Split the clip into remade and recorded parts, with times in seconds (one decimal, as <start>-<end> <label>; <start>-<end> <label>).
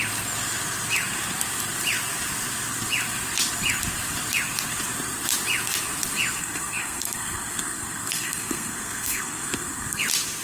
0.0-6.4 recorded; 6.4-10.0 remade; 10.0-10.4 recorded